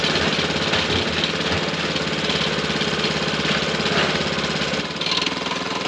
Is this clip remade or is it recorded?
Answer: recorded